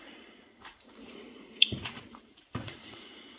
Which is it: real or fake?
fake